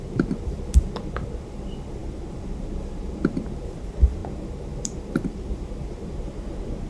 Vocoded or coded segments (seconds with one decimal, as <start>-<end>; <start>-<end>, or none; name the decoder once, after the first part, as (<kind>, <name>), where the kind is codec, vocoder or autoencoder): 0.0-6.9 (vocoder, BigVGAN v2)